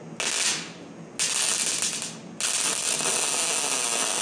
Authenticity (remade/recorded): recorded